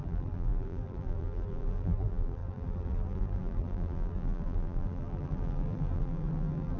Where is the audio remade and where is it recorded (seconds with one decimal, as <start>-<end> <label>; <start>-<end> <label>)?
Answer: 0.0-6.8 remade